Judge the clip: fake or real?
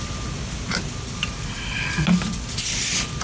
real